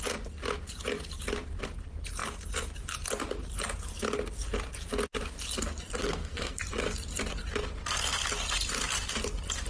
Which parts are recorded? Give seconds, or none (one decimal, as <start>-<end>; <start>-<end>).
0.0-6.0; 6.6-9.7